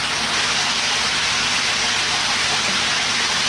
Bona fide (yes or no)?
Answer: yes